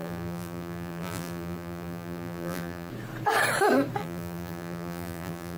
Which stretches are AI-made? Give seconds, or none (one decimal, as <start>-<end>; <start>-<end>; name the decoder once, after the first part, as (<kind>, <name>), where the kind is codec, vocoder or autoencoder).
0.0-2.9 (vocoder, BigVGAN v2); 4.0-5.6